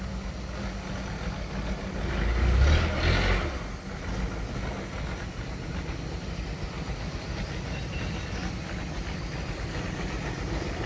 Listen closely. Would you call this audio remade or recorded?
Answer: recorded